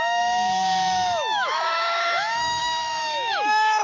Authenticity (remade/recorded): remade